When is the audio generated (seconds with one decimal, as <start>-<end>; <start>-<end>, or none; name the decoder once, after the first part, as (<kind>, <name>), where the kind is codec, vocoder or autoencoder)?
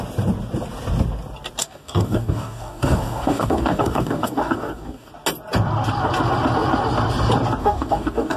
1.6-5.1 (codec, DAC); 7.6-8.4